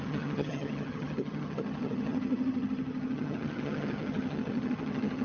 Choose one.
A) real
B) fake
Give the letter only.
B